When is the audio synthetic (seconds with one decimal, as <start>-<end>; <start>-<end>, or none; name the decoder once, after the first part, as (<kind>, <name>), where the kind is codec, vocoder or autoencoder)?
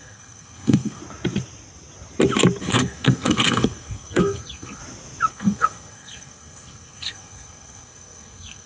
0.0-1.0 (codec, SNAC); 2.6-4.8; 5.3-8.7